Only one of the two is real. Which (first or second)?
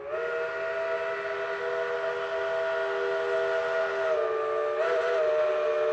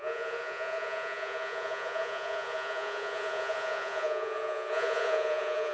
first